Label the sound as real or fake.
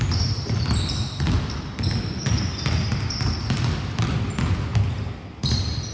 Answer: real